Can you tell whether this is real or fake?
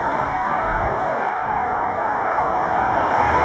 fake